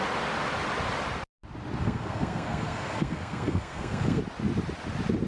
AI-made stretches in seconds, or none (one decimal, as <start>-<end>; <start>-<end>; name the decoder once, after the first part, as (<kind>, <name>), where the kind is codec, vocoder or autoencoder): 1.8-4.2 (codec, SNAC)